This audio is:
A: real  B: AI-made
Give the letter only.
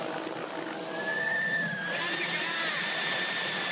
A